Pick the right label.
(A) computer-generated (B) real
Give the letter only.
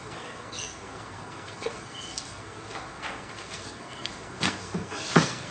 A